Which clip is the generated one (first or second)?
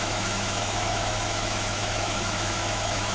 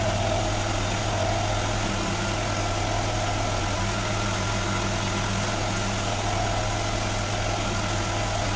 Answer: first